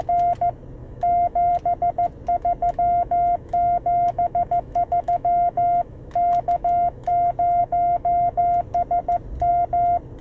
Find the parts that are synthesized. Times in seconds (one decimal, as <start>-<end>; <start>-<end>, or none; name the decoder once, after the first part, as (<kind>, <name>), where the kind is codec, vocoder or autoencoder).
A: 0.8-1.5 (autoencoder, DAC-VAE); 2.6-7.1; 7.6-8.4